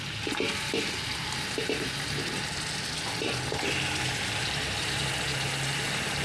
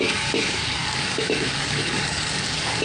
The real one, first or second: first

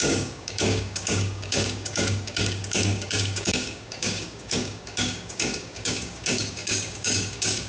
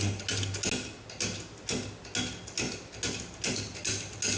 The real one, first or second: second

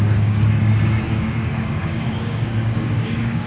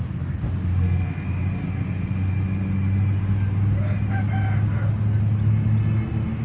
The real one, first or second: second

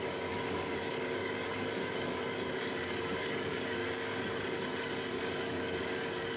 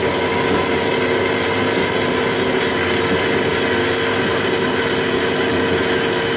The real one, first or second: second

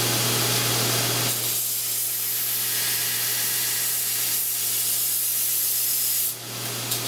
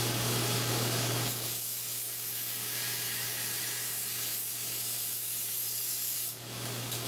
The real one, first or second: first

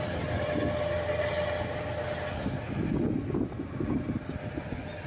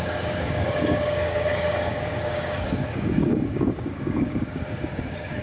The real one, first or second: first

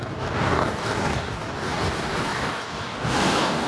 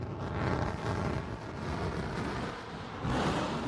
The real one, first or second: second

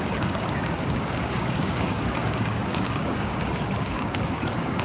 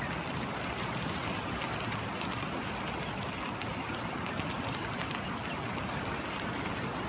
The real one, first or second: second